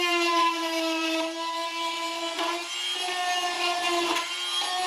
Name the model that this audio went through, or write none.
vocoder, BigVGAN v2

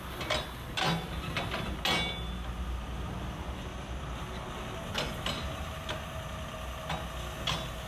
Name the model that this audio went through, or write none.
none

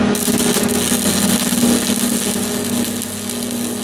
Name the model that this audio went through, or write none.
none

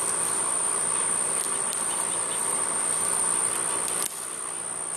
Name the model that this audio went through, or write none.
none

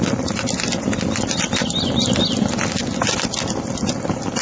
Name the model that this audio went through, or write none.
none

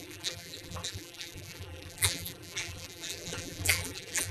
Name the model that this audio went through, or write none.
vocoder, BigVGAN v2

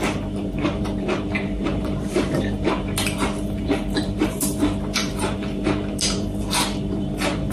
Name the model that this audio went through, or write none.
vocoder, BigVGAN v2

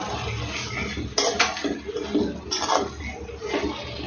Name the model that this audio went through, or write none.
none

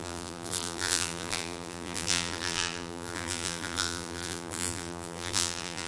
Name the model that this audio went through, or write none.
vocoder, BigVGAN v2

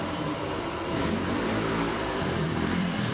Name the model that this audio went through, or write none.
vocoder, BigVGAN v2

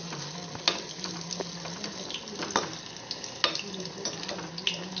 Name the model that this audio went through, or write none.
none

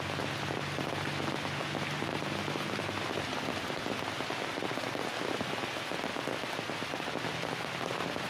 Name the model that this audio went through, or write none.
none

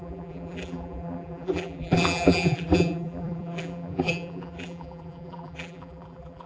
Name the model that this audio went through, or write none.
vocoder, BigVGAN v2